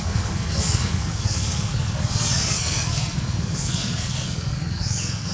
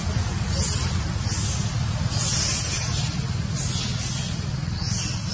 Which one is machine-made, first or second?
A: first